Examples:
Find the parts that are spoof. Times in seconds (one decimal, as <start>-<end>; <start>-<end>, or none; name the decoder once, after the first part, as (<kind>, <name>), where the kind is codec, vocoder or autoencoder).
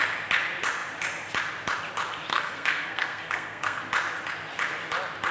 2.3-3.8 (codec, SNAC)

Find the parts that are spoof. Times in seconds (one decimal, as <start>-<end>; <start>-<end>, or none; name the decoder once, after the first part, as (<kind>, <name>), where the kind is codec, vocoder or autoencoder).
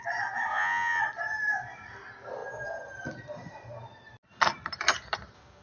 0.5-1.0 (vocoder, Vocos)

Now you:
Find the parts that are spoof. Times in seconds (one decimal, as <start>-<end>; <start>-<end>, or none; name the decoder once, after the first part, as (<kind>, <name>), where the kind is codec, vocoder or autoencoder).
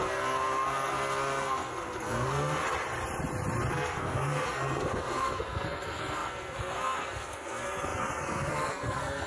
0.0-2.6 (codec, SNAC); 3.7-9.3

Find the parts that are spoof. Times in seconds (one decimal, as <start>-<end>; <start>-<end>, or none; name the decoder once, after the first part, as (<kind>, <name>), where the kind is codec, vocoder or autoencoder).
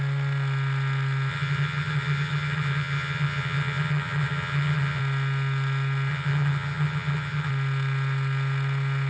1.3-5.0 (vocoder, HiFi-GAN); 6.1-7.5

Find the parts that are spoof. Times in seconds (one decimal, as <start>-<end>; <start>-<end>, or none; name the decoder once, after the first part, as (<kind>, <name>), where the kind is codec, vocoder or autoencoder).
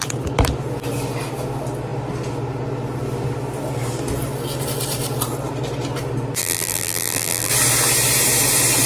6.4-7.5 (vocoder, BigVGAN v2)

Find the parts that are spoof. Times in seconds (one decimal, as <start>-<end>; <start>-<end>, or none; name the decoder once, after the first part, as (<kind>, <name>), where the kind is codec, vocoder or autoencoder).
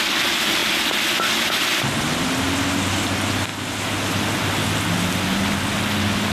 none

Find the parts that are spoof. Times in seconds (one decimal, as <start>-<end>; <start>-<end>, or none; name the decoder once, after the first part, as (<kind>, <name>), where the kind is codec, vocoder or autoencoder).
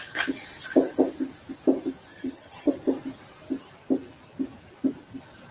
2.1-2.7 (vocoder, HiFi-GAN)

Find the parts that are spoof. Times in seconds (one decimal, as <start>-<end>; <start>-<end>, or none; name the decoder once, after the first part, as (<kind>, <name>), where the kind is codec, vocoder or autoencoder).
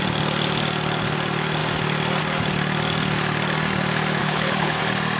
4.2-4.8 (codec, HILCodec)